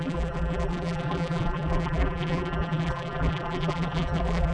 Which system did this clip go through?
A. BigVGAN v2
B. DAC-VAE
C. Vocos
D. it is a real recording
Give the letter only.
A